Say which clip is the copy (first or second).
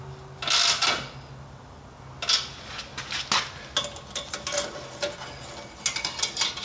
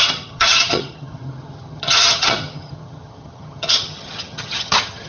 second